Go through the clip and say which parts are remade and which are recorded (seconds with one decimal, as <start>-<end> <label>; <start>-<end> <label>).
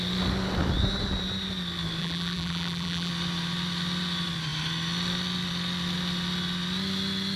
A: 0.0-2.0 recorded; 2.0-3.1 remade; 3.1-7.4 recorded